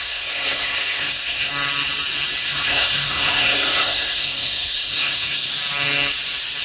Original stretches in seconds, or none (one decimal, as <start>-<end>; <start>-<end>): 1.5-2.4; 5.5-6.6

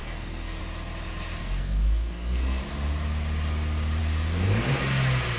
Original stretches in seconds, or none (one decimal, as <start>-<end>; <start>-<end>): 0.6-1.4; 2.6-5.4

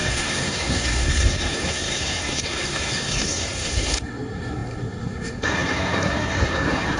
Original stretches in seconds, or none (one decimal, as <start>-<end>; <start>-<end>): none

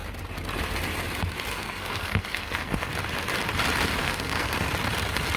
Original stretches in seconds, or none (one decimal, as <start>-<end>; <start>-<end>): 0.0-1.5; 2.9-4.0; 4.7-5.4

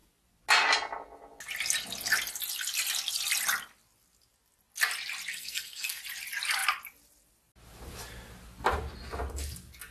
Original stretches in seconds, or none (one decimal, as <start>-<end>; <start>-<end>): 0.0-5.3; 6.0-9.9

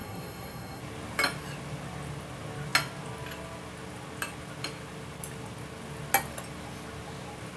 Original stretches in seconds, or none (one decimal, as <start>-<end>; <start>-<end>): 0.8-7.6

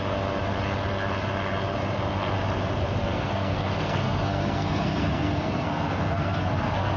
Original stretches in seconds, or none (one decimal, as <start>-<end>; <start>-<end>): 0.0-3.0

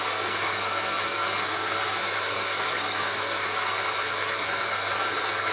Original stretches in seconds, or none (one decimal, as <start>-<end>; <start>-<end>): none